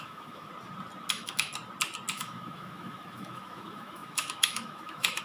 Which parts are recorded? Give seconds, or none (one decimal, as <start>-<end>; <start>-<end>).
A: 0.5-1.1; 1.5-2.1